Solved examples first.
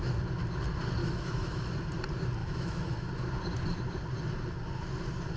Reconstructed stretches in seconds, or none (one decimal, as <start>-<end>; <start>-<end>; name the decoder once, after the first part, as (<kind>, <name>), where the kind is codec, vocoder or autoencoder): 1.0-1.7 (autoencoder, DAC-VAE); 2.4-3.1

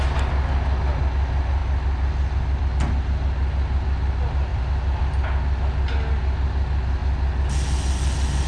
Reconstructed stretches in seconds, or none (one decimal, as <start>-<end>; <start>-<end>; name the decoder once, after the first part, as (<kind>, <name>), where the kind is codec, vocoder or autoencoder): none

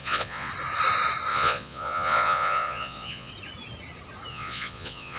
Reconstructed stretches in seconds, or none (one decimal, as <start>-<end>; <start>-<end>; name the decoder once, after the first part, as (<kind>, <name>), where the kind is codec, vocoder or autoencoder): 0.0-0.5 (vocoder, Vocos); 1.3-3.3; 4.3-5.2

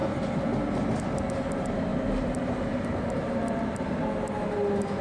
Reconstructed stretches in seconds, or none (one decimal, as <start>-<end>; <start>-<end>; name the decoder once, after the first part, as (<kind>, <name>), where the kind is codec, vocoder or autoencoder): 1.9-4.0 (vocoder, BigVGAN v2)

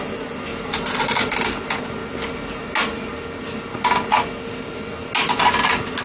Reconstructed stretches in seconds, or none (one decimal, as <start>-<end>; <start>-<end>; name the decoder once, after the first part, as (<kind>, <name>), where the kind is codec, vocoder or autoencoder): 0.5-1.1 (vocoder, BigVGAN v2)

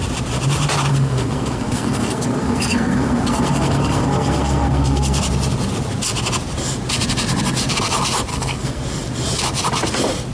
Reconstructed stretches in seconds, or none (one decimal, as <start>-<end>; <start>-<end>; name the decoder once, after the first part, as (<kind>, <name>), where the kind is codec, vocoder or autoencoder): 0.9-5.2 (codec, SNAC); 8.3-8.8

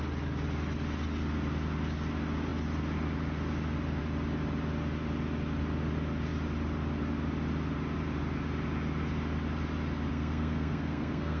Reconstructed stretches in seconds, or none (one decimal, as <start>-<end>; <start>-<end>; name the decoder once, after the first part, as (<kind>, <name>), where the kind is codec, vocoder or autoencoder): 10.1-11.4 (codec, SNAC)

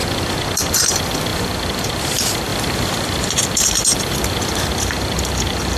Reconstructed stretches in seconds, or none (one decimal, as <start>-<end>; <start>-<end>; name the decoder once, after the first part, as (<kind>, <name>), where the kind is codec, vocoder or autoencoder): 0.5-1.3 (vocoder, BigVGAN v2); 2.0-2.5; 3.3-5.8